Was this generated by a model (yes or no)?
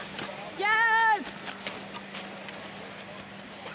no